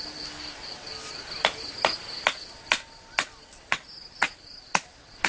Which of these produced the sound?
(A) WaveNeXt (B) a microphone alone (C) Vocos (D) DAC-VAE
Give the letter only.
B